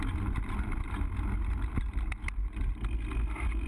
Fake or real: real